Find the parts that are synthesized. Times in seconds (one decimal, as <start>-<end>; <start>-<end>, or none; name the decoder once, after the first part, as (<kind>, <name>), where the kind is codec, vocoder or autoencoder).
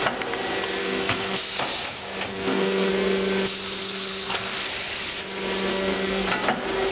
0.8-1.4 (codec, SNAC); 2.3-2.9; 3.8-4.7; 5.7-6.3